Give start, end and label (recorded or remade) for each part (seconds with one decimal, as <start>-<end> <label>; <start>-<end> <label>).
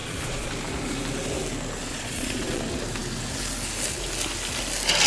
0.0-0.5 remade; 0.5-1.9 recorded; 1.9-2.6 remade; 2.6-5.1 recorded